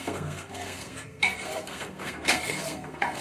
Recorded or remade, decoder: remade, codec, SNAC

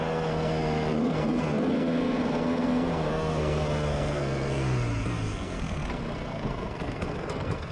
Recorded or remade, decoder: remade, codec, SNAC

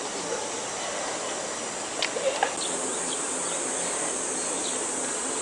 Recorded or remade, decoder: recorded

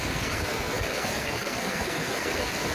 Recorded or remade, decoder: remade, codec, SNAC